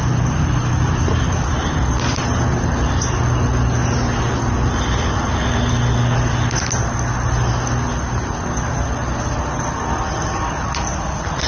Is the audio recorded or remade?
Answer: recorded